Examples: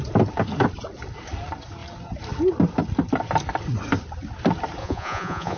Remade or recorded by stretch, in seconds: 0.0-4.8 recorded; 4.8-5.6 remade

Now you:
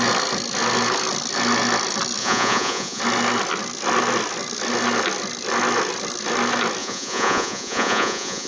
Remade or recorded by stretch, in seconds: 0.0-2.2 recorded; 2.2-3.0 remade; 3.0-6.8 recorded; 6.8-8.5 remade

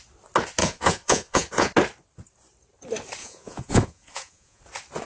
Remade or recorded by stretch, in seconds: 0.0-0.6 recorded; 0.6-1.7 remade; 1.7-3.2 recorded; 3.2-4.6 remade; 4.6-5.1 recorded

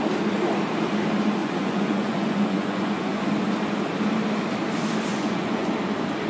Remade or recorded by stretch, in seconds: 0.0-1.4 recorded; 1.4-3.2 remade; 3.2-5.1 recorded; 5.1-5.7 remade; 5.7-6.3 recorded